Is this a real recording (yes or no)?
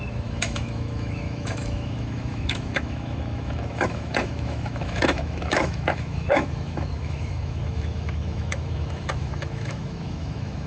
no